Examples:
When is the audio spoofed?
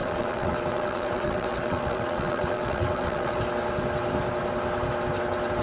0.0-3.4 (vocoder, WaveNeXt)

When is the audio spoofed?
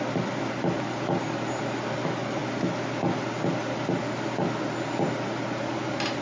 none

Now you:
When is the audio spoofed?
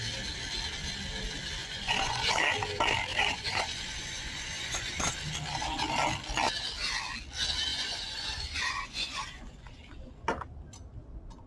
1.6-2.3 (vocoder, Vocos); 3.1-5.1; 7.7-10.1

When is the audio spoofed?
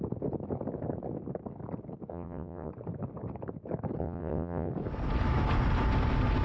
2.1-2.7 (vocoder, WaveNeXt); 4.0-4.7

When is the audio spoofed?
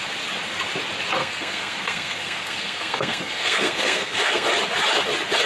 1.2-4.5 (codec, SNAC)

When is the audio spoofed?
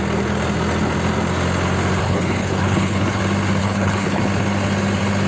2.0-3.2 (codec, HILCodec); 3.6-4.2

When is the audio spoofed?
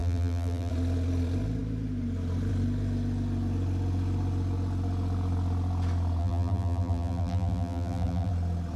0.0-0.7 (vocoder, BigVGAN v2); 6.2-8.3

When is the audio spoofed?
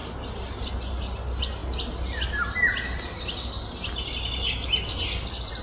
none